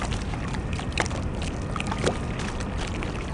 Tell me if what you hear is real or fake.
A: real